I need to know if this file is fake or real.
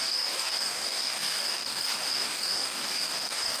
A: fake